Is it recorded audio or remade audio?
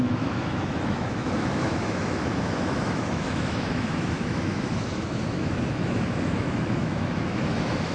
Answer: remade